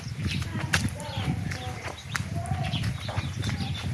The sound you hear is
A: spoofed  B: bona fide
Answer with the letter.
B